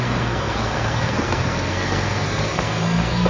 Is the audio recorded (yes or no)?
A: no